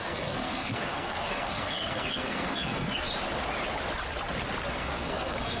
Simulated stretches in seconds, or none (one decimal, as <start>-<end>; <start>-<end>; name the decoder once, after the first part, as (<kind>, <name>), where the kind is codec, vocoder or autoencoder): 0.0-3.1 (codec, SNAC); 4.7-5.6